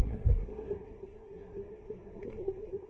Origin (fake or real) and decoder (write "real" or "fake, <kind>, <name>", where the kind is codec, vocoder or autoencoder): fake, codec, SNAC